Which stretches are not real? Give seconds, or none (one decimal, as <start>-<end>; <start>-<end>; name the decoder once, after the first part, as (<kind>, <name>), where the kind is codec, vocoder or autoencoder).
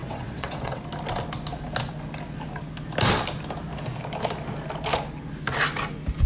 0.0-0.8 (vocoder, WaveNeXt)